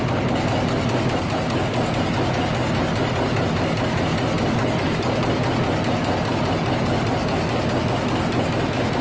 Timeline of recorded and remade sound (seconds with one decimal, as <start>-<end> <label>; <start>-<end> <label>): 0.0-9.0 recorded